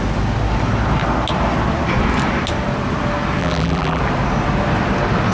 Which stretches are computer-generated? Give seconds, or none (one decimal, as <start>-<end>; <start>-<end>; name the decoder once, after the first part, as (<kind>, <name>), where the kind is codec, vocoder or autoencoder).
3.4-4.0 (vocoder, BigVGAN v2)